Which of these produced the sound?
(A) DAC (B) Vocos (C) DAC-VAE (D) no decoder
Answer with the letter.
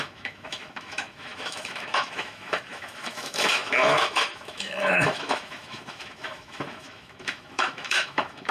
C